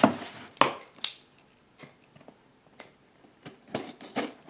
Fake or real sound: real